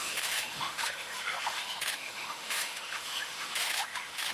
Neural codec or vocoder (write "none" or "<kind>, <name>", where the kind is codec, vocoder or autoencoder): autoencoder, DAC-VAE